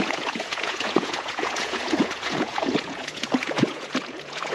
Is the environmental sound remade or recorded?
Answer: remade